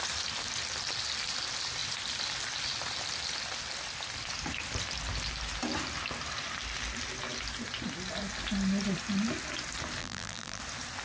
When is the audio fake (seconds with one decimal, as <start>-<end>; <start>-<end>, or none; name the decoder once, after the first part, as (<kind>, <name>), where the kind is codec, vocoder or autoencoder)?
10.0-10.6 (vocoder, BigVGAN v2)